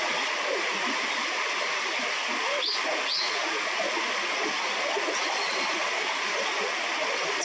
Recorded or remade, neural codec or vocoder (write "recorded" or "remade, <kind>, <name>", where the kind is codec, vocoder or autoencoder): recorded